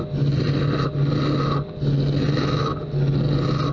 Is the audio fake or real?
real